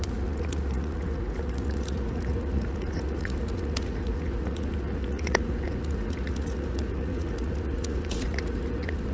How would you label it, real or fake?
fake